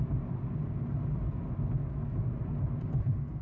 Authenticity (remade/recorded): recorded